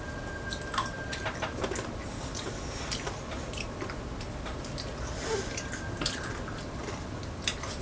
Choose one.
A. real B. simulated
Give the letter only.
A